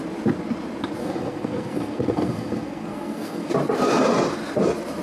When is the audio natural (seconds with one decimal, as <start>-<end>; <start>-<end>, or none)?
0.0-1.0; 3.5-5.0